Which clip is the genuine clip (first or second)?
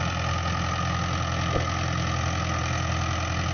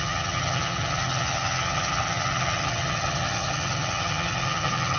first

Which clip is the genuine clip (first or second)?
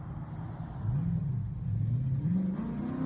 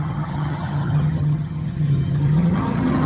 first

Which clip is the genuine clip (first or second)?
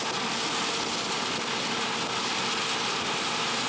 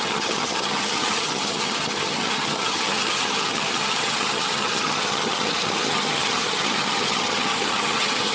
first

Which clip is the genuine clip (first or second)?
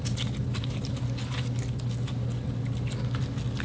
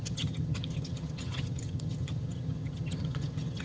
first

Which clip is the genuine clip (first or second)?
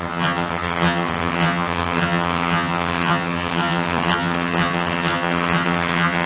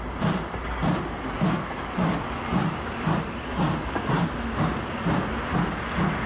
second